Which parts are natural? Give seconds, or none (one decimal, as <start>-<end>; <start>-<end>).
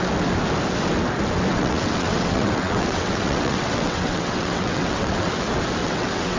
0.0-1.5; 5.3-5.8